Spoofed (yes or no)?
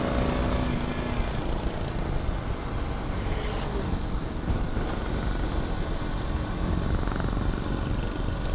no